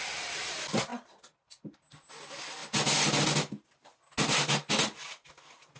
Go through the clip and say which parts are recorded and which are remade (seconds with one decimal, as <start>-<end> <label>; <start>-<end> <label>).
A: 0.0-5.8 recorded